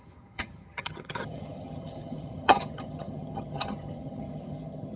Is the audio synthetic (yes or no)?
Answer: yes